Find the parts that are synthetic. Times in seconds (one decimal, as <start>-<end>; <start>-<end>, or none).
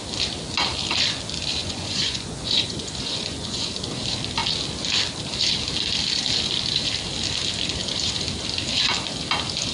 1.6-3.7